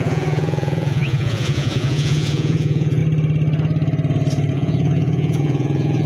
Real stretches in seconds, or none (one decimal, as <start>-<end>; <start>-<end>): 3.0-4.5